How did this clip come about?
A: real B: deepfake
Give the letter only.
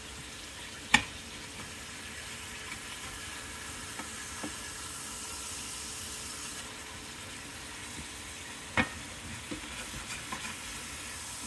A